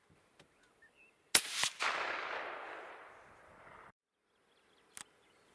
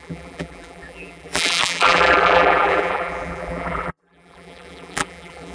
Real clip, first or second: first